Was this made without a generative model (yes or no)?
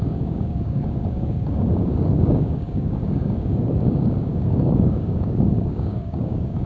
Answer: no